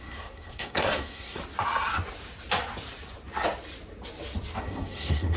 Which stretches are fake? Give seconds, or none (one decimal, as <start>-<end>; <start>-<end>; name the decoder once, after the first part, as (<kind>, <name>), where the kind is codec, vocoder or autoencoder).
0.0-1.4 (codec, SNAC); 4.6-5.4